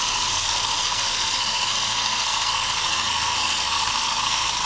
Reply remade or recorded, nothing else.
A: remade